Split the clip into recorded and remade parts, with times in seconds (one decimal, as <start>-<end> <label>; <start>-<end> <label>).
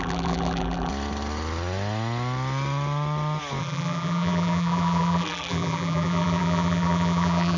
0.0-0.9 remade; 0.9-3.6 recorded; 3.6-7.6 remade